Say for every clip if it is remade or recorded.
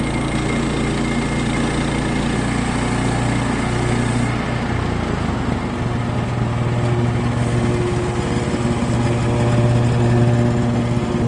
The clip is recorded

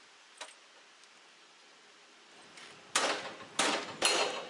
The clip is recorded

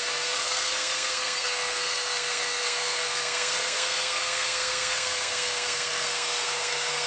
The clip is remade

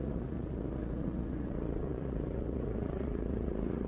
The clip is remade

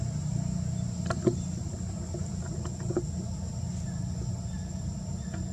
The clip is recorded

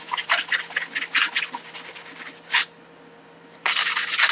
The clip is recorded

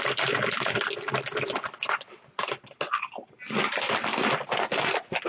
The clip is recorded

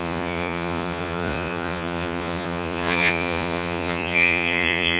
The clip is remade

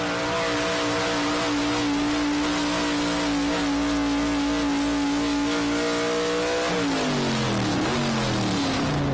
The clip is recorded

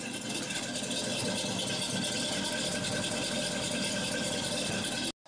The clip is recorded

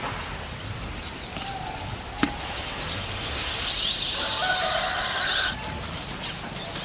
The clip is recorded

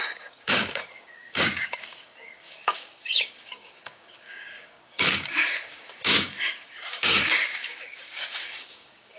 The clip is remade